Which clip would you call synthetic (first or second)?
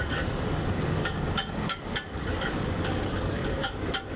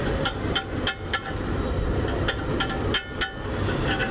first